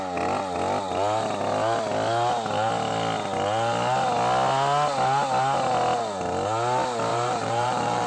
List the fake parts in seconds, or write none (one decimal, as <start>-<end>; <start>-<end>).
7.1-8.1